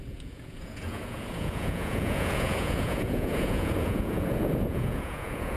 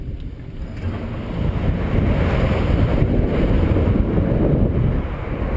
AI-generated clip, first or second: first